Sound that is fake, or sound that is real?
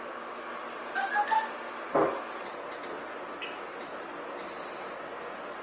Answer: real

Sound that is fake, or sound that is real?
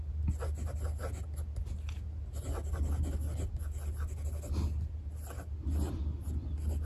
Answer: real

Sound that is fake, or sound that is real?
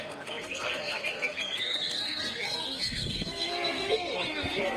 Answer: fake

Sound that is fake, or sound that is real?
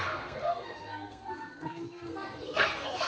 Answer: fake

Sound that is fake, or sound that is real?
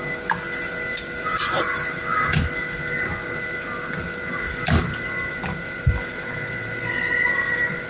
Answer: fake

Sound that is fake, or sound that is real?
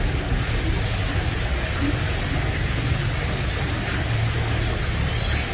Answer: real